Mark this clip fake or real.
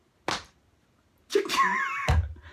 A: real